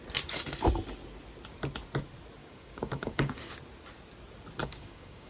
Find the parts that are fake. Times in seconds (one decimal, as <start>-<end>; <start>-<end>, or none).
2.4-3.5; 4.6-5.3